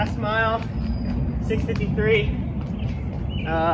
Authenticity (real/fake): real